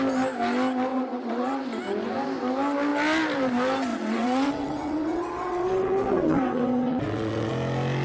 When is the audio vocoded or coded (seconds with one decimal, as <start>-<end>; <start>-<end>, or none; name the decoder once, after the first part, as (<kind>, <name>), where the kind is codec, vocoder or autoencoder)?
0.9-1.6 (vocoder, WaveNeXt); 3.9-7.5